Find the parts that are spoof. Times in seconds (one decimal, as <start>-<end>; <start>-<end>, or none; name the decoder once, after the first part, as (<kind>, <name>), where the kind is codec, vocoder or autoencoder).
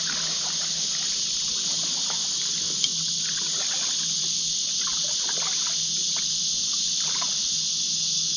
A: none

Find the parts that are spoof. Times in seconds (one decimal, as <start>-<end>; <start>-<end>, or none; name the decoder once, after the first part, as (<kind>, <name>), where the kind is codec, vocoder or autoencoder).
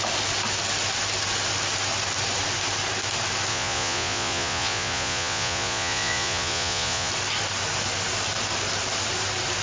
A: 3.5-7.1 (vocoder, Vocos)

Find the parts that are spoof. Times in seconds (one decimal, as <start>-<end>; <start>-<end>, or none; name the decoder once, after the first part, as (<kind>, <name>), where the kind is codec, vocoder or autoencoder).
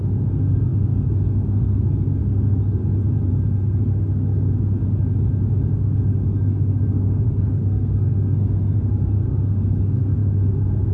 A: 0.0-2.8 (codec, SNAC); 3.3-4.8; 5.7-10.9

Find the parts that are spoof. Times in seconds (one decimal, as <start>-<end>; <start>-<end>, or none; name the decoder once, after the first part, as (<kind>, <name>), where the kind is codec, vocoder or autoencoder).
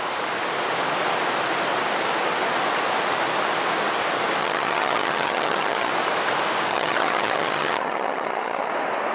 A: 4.4-5.9 (vocoder, HiFi-GAN); 6.7-8.7